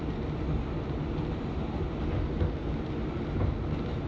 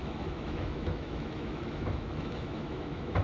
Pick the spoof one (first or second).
second